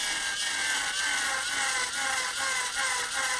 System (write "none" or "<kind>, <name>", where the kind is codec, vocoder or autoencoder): none